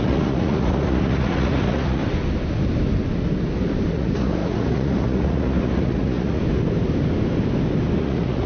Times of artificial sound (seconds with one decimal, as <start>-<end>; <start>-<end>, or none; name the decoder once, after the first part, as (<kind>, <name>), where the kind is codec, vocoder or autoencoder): 0.0-2.0 (vocoder, Vocos); 3.9-6.4; 8.0-8.5